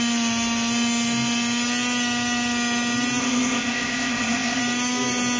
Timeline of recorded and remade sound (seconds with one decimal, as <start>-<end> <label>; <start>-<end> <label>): 0.0-3.2 recorded; 3.2-4.6 remade; 4.6-5.4 recorded